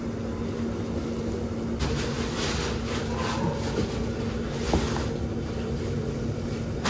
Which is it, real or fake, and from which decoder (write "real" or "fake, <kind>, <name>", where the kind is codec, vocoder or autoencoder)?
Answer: real